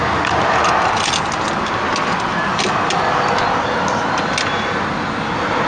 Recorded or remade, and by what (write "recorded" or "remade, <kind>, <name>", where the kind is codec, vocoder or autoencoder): recorded